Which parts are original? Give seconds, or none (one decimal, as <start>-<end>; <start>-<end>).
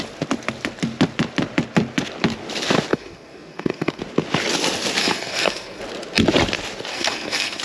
0.0-2.9; 4.0-5.0; 5.8-6.9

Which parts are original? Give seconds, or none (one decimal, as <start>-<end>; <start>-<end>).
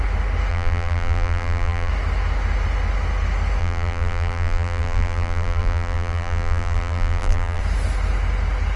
0.0-0.5; 1.9-3.6; 7.6-8.8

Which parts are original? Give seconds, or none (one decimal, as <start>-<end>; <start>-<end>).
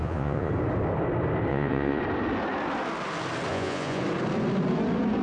0.5-1.5; 2.0-3.5; 4.0-5.2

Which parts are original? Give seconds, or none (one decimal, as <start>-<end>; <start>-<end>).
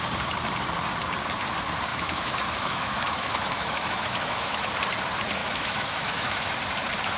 0.0-1.9; 4.7-5.4; 6.5-7.2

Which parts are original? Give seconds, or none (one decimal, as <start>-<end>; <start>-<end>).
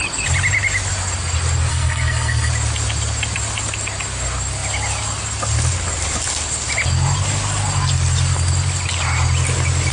0.0-1.7; 2.5-9.9